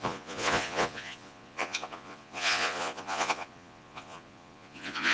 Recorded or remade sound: remade